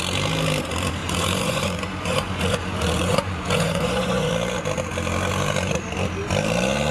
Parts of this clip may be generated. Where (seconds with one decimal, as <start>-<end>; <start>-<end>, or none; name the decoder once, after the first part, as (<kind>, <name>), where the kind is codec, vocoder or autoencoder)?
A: 1.0-4.3 (vocoder, Vocos)